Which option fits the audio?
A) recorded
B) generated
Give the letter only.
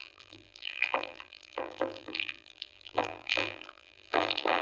B